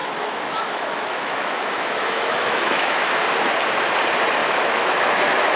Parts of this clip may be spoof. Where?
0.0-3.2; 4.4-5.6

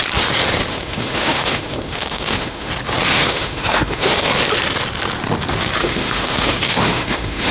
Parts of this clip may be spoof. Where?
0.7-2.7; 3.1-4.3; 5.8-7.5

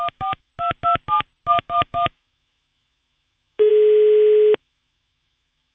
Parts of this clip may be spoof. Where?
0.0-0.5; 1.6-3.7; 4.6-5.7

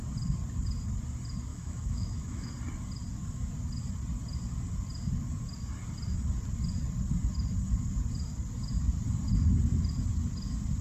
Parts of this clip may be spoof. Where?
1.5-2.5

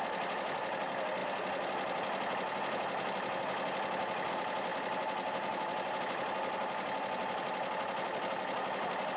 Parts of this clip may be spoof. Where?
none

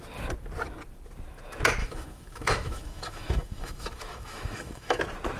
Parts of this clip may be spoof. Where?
1.8-5.0